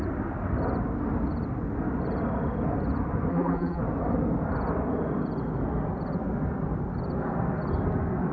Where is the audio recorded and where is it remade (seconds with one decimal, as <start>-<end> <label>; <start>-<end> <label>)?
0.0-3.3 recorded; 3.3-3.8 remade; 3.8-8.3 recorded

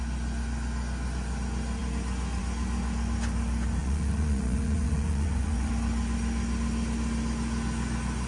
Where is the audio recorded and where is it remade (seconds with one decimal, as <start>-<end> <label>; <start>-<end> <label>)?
0.0-3.8 recorded; 3.8-5.7 remade; 5.7-8.3 recorded

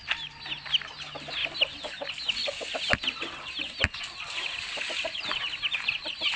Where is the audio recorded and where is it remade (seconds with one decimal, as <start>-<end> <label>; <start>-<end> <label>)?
0.0-6.4 recorded

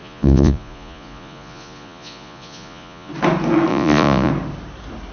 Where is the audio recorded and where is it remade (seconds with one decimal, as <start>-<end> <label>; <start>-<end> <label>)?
0.0-3.1 remade; 3.1-3.7 recorded; 3.7-4.3 remade; 4.3-5.1 recorded

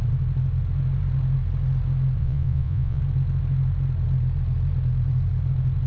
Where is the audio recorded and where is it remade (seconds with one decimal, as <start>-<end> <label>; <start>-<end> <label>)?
0.0-2.2 recorded; 2.2-3.0 remade; 3.0-5.9 recorded

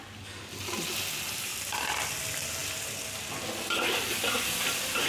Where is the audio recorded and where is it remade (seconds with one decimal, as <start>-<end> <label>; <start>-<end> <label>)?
0.0-1.5 recorded; 1.5-2.2 remade; 2.2-5.1 recorded